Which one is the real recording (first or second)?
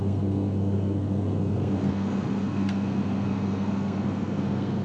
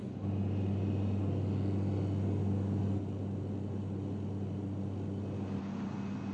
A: second